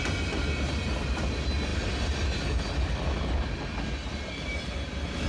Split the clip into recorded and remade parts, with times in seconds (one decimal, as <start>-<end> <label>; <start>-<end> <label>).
0.0-5.3 recorded